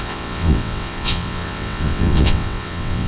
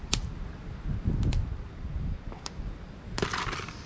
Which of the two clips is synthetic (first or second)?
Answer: first